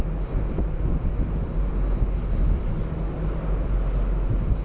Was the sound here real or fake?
real